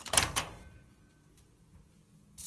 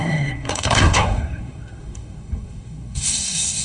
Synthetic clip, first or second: second